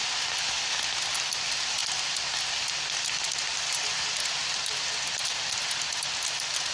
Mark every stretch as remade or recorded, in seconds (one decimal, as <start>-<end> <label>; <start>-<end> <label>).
0.0-6.7 recorded